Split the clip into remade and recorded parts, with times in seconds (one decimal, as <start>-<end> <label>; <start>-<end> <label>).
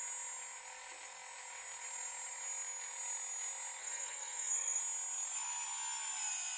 0.0-3.8 recorded; 3.8-4.8 remade; 4.8-6.6 recorded